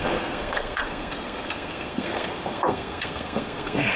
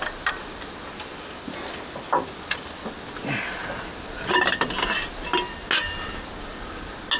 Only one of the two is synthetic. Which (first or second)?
first